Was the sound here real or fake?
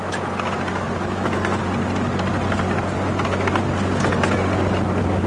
real